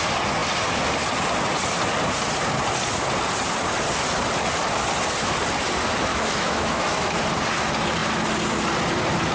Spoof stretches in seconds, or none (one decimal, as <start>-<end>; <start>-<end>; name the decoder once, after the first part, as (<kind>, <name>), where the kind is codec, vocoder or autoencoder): 6.1-7.2 (autoencoder, DAC-VAE)